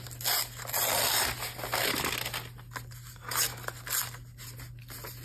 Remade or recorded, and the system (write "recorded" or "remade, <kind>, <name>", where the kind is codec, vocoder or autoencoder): recorded